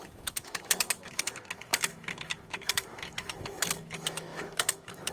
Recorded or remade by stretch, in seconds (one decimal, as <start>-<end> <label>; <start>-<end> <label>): 0.0-5.1 remade

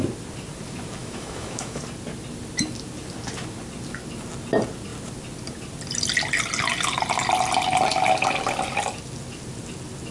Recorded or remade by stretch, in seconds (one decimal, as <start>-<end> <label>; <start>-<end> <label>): 0.0-1.0 recorded; 1.0-1.8 remade; 1.8-10.1 recorded

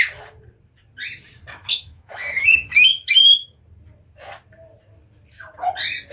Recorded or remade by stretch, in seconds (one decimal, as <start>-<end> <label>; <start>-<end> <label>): 0.0-1.6 recorded; 1.6-3.6 remade; 3.6-6.1 recorded

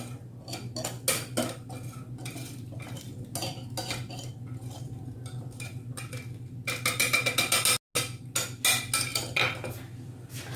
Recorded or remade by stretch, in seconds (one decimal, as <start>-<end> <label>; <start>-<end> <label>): 0.0-10.6 recorded

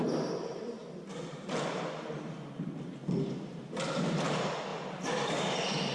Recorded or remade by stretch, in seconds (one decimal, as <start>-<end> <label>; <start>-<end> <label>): 0.0-5.9 recorded

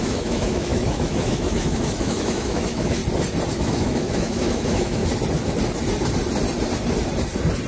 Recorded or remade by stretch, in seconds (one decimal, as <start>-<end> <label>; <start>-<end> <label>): 0.0-3.0 remade; 3.0-3.5 recorded; 3.5-5.0 remade; 5.0-7.7 recorded